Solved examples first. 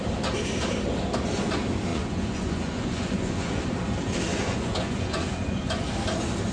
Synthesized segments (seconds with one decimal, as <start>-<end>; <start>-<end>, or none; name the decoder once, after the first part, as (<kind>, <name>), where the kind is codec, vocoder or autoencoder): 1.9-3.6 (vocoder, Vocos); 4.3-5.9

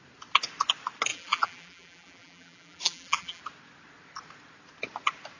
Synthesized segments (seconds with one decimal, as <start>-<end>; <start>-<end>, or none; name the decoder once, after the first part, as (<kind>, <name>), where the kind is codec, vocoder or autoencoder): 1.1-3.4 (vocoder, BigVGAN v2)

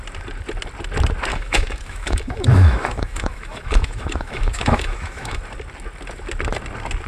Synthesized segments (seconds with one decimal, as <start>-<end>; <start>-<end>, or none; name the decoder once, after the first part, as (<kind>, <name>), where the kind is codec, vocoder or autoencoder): 1.3-5.4 (autoencoder, DAC-VAE)

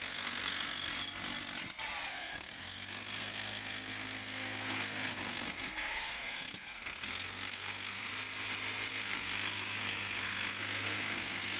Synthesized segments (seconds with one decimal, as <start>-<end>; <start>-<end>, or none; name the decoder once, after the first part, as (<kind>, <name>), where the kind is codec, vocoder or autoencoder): 0.0-0.9 (codec, SNAC); 2.1-8.1; 8.9-11.6